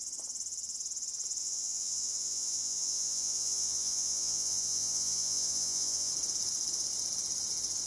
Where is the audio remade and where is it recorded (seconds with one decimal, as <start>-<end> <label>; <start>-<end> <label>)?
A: 0.0-1.4 recorded; 1.4-6.1 remade; 6.1-7.9 recorded